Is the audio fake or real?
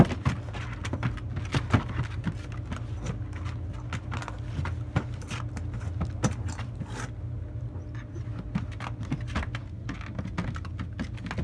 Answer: real